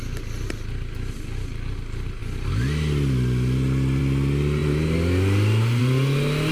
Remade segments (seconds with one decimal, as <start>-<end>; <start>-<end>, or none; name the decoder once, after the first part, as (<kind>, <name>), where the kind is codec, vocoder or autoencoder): none